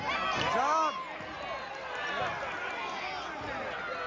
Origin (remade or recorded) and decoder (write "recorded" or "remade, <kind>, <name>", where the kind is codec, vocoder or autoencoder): recorded